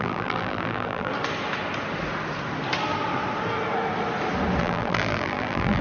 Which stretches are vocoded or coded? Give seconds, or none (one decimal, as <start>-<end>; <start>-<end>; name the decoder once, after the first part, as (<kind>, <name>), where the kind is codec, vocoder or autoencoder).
0.0-1.1 (vocoder, BigVGAN v2); 4.6-5.8